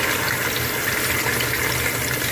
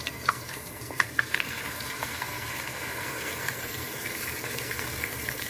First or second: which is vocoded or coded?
second